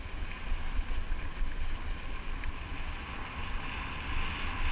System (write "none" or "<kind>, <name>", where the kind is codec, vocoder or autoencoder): none